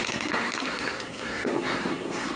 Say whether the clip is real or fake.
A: fake